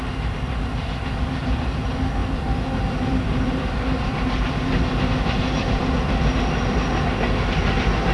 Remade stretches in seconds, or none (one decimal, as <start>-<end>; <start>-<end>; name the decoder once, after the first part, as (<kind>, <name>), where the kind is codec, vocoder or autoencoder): 2.2-5.8 (vocoder, BigVGAN v2)